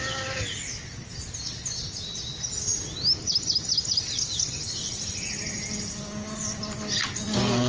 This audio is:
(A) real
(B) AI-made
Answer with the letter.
A